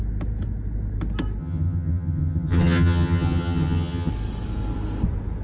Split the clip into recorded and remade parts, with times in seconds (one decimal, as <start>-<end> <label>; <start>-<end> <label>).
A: 0.0-1.4 recorded; 1.4-4.1 remade; 4.1-5.4 recorded